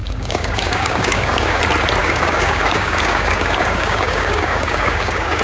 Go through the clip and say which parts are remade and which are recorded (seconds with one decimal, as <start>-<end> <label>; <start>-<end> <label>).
0.0-1.6 remade; 1.6-2.0 recorded; 2.0-5.4 remade